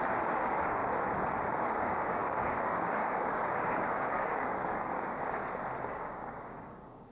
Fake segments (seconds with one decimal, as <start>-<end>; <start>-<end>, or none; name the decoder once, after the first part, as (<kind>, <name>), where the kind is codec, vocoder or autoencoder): 0.0-0.8 (codec, DAC); 1.7-5.4; 5.9-7.1